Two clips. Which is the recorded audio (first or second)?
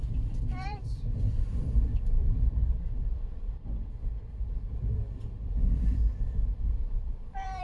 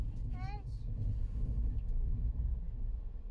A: second